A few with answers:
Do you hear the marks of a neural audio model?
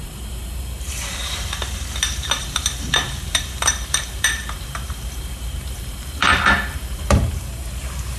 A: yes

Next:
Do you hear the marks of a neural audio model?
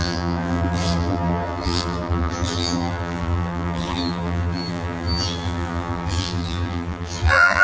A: yes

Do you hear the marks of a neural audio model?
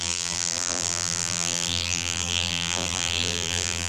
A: yes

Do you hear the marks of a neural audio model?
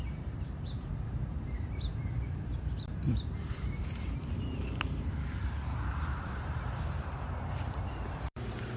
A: yes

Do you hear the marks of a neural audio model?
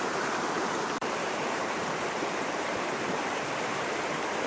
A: yes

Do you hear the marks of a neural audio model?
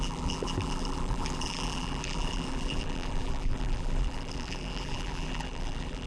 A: yes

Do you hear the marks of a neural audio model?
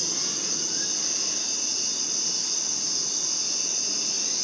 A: no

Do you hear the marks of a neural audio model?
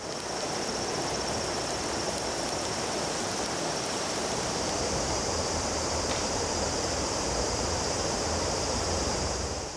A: yes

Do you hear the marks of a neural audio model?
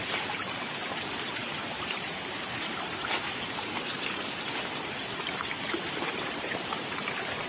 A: yes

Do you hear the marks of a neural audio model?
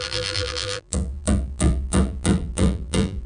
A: yes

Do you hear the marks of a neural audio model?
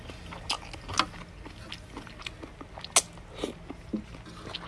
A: no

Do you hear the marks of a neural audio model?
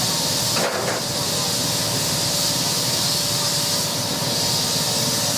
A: no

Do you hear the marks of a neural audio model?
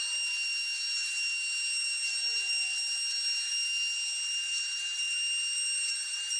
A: no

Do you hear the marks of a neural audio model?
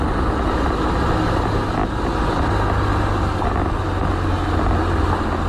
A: no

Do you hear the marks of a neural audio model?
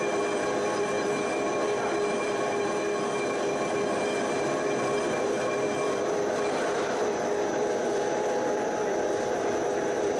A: yes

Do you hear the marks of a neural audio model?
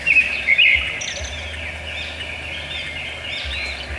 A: no